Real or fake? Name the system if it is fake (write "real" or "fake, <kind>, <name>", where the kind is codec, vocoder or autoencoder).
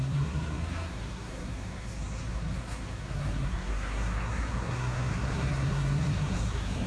fake, codec, SNAC